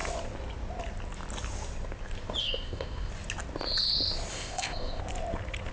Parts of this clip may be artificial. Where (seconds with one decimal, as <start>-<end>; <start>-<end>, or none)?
2.4-3.1; 4.3-5.0